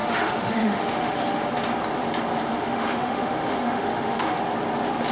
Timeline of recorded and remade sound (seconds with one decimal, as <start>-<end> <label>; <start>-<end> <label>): 0.0-1.5 remade; 1.5-2.5 recorded; 2.5-4.4 remade; 4.4-5.1 recorded